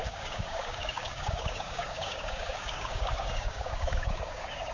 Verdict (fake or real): fake